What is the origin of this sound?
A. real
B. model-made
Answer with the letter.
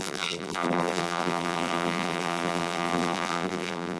B